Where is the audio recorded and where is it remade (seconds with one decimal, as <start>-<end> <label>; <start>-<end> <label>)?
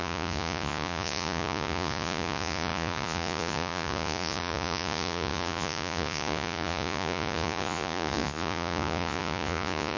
0.0-10.0 remade